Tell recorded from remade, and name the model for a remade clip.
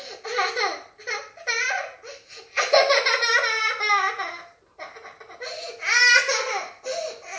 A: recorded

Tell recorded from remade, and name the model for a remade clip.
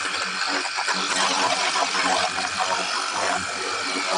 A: recorded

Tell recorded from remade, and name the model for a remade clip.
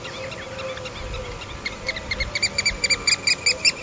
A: recorded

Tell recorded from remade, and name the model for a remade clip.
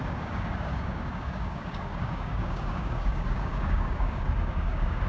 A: remade, codec, DAC